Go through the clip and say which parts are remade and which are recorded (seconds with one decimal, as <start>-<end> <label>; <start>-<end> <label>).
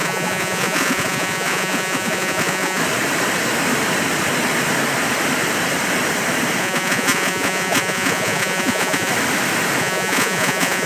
0.0-2.8 remade; 2.8-6.6 recorded; 6.6-9.1 remade; 9.1-9.8 recorded; 9.8-10.9 remade